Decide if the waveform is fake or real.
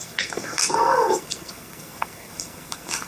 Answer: fake